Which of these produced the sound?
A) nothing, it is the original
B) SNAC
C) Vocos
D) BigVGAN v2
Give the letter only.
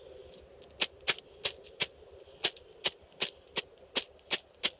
A